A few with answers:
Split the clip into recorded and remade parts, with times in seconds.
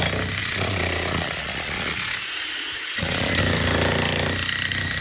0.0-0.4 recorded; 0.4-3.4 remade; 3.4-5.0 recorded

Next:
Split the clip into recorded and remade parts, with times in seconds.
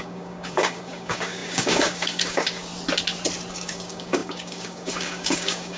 0.0-2.7 remade; 2.7-3.5 recorded; 3.5-5.8 remade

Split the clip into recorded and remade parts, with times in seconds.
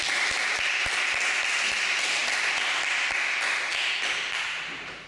0.0-5.1 recorded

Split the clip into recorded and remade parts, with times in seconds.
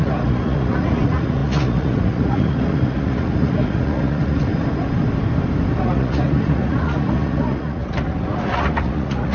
0.0-4.5 remade; 4.5-5.8 recorded; 5.8-9.3 remade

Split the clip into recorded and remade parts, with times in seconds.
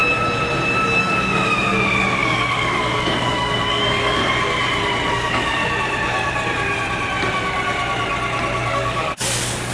0.0-1.0 recorded; 1.0-4.2 remade; 4.2-5.1 recorded; 5.1-5.6 remade; 5.6-8.7 recorded; 8.7-9.7 remade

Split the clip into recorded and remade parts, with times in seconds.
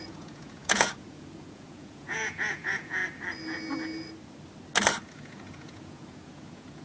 0.0-3.0 remade; 3.0-5.1 recorded; 5.1-6.8 remade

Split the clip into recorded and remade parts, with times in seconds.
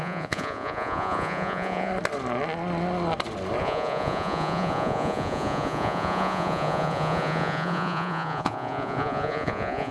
0.0-1.9 remade; 1.9-3.6 recorded; 3.6-9.9 remade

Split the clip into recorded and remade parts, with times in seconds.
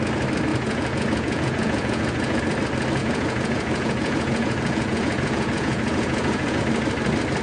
0.0-0.5 recorded; 0.5-2.4 remade; 2.4-3.0 recorded; 3.0-6.6 remade; 6.6-7.4 recorded